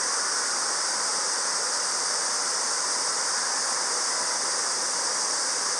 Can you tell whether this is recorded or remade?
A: recorded